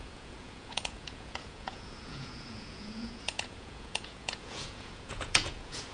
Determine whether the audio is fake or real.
fake